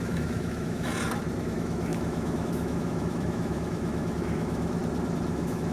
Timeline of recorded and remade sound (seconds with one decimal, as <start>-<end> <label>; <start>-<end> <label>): 0.0-0.9 remade; 0.9-1.4 recorded; 1.4-4.8 remade; 4.8-5.3 recorded; 5.3-5.7 remade